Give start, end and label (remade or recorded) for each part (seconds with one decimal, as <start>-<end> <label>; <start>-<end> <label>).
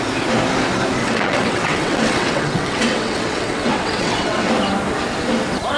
0.0-1.0 recorded; 1.0-4.5 remade; 4.5-5.8 recorded